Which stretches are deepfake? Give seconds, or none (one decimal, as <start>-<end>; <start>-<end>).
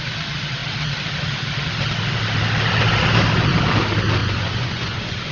4.2-5.3